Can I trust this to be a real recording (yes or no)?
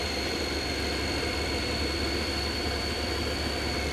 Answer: no